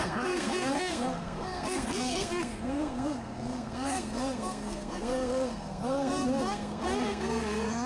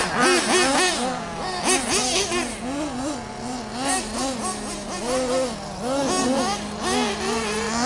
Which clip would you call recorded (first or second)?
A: second